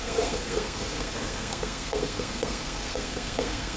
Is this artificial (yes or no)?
yes